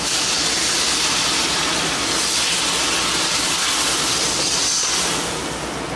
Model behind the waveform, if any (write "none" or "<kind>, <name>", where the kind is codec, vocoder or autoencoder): none